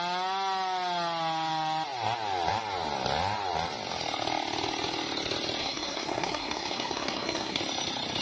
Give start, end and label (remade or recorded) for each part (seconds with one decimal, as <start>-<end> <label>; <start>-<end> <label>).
0.0-5.6 recorded; 5.6-7.6 remade; 7.6-8.2 recorded